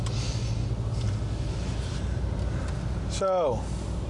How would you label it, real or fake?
real